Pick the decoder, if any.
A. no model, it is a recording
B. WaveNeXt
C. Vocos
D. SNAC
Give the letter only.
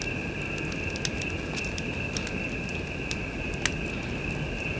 A